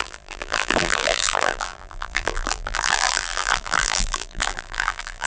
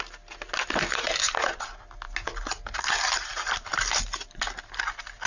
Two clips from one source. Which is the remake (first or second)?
first